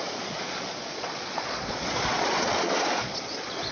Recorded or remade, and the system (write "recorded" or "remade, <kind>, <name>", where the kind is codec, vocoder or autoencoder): remade, vocoder, Vocos